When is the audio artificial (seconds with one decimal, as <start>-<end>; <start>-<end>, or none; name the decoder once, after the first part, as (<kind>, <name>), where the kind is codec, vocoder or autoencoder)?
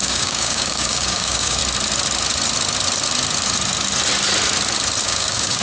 0.0-1.6 (codec, DAC); 5.0-5.6